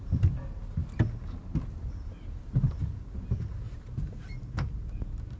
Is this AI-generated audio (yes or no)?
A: no